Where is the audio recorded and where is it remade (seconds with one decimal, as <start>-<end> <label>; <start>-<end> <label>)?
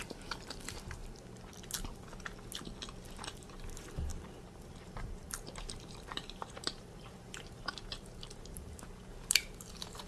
0.0-1.0 remade; 1.0-3.2 recorded; 3.2-10.1 remade